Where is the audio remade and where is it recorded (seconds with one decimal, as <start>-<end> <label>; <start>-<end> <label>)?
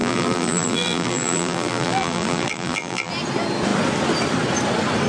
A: 0.0-3.1 remade; 3.1-5.1 recorded